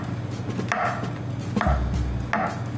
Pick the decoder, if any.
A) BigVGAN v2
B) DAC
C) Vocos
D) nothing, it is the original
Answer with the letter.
D